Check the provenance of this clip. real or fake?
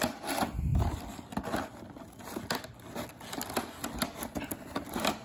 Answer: real